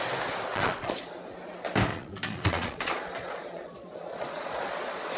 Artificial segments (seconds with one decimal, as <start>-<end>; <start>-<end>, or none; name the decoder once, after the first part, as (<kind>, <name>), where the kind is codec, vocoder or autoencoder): 0.5-1.1 (vocoder, Vocos); 1.9-5.2

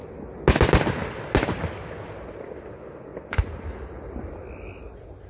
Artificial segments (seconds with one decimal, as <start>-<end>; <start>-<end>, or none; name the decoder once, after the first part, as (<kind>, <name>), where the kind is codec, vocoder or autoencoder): none

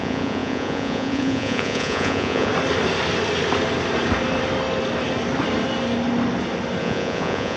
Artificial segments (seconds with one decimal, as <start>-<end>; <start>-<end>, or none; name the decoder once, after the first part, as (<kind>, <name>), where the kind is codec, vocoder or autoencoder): 0.0-2.5 (vocoder, Vocos); 6.8-7.6

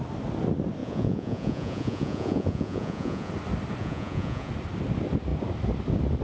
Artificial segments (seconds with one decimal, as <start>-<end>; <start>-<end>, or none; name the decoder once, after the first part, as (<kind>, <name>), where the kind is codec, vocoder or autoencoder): 0.8-3.3 (vocoder, Vocos); 3.8-4.5

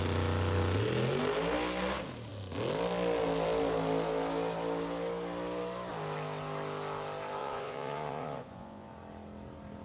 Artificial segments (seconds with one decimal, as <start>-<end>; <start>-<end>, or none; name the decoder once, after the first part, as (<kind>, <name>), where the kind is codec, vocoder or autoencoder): 7.4-8.9 (vocoder, Vocos)